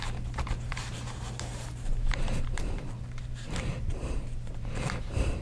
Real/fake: fake